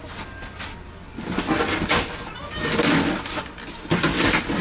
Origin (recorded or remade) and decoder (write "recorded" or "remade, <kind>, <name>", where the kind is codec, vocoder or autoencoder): recorded